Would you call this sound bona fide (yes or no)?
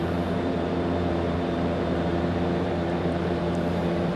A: no